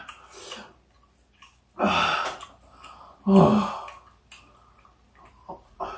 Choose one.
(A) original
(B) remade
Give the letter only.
A